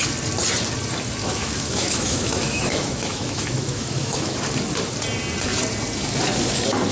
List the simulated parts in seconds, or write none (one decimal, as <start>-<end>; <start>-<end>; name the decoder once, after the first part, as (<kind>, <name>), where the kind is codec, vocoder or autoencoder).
1.2-4.4 (autoencoder, DAC-VAE)